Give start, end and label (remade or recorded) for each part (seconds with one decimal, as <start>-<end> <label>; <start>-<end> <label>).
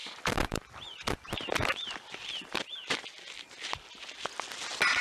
0.0-3.0 remade; 3.0-5.0 recorded